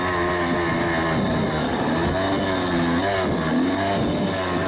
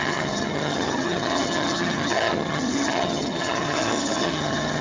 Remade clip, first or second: second